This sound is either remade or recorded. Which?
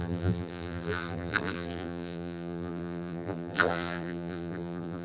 remade